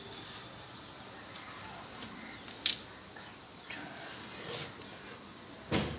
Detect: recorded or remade recorded